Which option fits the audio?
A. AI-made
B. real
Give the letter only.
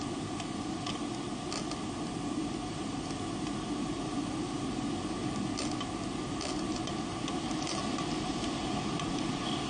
B